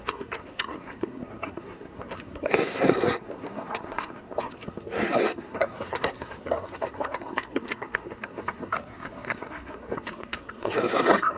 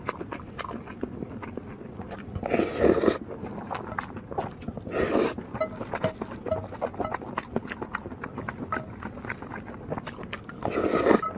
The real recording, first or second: second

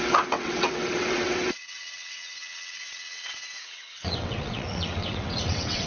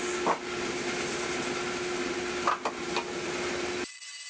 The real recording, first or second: second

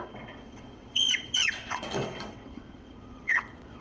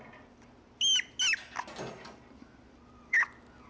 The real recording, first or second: second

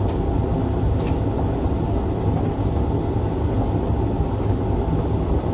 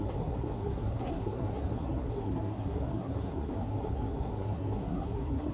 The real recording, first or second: first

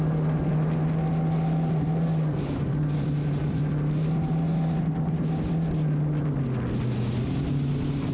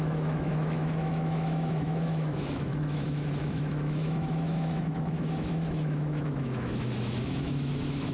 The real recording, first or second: first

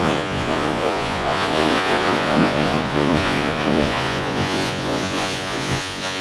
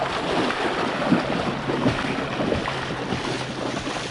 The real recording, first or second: second